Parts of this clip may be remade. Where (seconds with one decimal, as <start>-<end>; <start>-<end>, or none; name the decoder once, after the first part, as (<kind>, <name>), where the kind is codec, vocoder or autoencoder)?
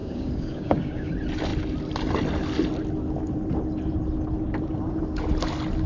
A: 0.0-1.1 (codec, DAC)